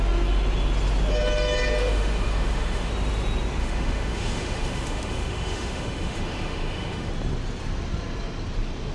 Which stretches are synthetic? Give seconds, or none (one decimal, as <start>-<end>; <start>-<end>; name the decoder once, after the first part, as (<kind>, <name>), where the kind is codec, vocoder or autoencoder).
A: 1.8-2.9 (autoencoder, DAC-VAE); 3.6-7.1